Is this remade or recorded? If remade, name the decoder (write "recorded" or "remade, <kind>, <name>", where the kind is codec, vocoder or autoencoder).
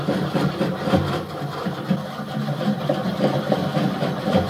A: recorded